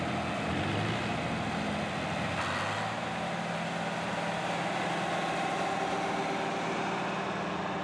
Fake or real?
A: real